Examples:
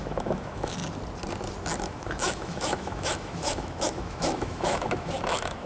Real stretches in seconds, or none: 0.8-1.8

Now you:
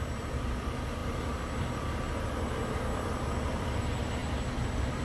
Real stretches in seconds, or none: 0.0-5.0

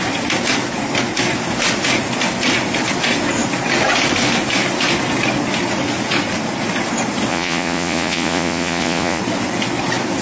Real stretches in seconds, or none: 0.0-7.3; 9.2-10.2

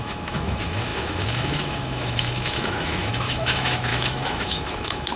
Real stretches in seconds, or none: none

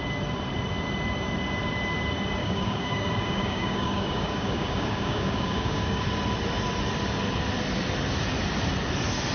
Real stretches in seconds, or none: 0.0-2.4; 6.0-9.3

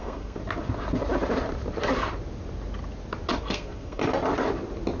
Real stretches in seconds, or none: 0.4-3.4; 4.0-5.0